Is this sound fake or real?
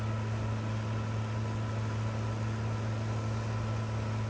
real